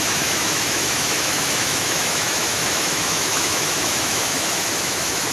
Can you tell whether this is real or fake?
fake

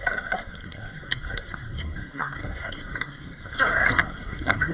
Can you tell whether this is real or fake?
fake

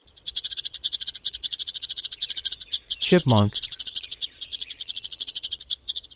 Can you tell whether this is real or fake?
fake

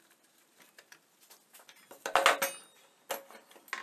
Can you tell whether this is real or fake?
real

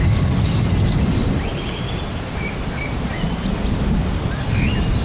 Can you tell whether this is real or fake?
real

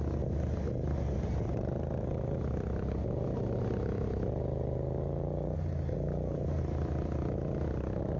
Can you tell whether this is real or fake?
real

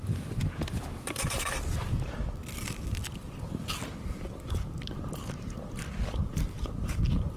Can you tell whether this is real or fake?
real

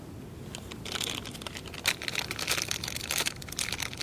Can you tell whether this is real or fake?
real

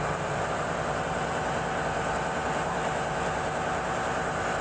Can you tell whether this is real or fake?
real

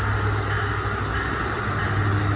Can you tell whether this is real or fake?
real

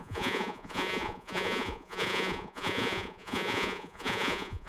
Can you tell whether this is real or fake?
fake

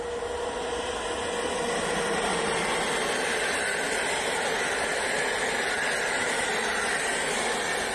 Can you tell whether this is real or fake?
real